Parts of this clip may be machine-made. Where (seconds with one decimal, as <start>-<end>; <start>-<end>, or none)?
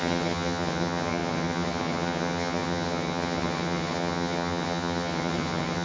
0.0-5.8